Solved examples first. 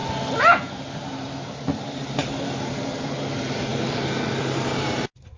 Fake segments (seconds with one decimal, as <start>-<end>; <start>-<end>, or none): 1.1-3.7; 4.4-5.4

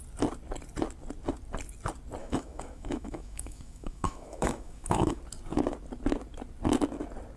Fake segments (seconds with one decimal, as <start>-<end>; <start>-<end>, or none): 2.2-5.2

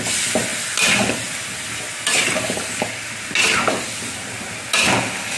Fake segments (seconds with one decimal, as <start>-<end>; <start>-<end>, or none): none

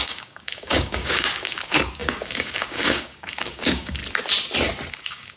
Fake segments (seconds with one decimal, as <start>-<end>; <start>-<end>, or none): 0.0-4.0; 4.9-5.4